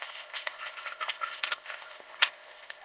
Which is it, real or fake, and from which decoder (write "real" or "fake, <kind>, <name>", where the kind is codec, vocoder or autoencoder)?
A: fake, codec, ZipCodec